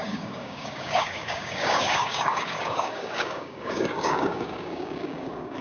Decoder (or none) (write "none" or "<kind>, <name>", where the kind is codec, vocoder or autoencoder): codec, DAC